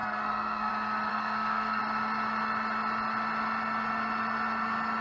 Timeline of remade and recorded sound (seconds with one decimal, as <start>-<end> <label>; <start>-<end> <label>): 0.0-0.7 remade; 0.7-1.1 recorded; 1.1-1.8 remade; 1.8-5.0 recorded